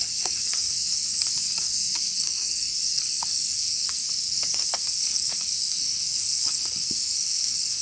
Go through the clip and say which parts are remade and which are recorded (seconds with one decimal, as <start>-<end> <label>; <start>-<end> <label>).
0.0-7.8 remade